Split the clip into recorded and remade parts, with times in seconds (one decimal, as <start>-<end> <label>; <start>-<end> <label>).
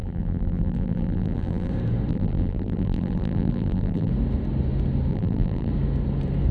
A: 0.0-1.7 remade; 1.7-2.1 recorded; 2.1-4.1 remade; 4.1-5.1 recorded; 5.1-5.7 remade; 5.7-6.5 recorded